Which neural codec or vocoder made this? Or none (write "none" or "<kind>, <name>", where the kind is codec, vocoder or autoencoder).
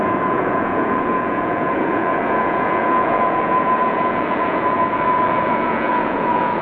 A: vocoder, Vocos